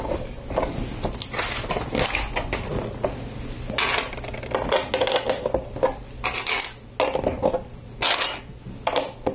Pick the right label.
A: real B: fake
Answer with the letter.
A